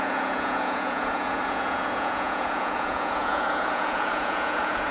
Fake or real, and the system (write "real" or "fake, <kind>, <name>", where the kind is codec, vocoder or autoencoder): fake, vocoder, Vocos